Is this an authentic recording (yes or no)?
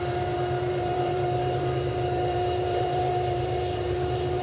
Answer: no